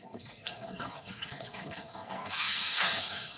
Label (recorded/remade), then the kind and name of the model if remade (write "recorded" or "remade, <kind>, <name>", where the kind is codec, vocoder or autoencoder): remade, codec, SNAC